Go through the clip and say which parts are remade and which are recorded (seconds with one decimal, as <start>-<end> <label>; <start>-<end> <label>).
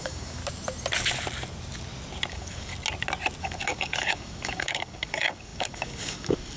0.0-0.4 remade; 0.4-2.3 recorded; 2.3-2.7 remade; 2.7-3.4 recorded; 3.4-6.6 remade